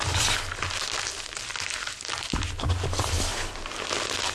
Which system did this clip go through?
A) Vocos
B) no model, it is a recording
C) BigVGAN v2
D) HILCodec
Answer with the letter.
B